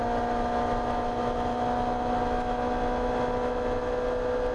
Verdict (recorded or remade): recorded